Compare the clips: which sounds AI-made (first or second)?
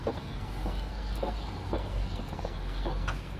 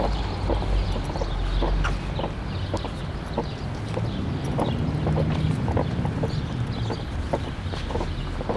first